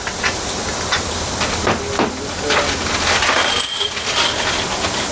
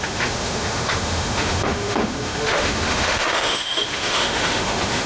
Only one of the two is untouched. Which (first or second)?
first